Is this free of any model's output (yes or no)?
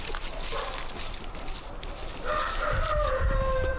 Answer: yes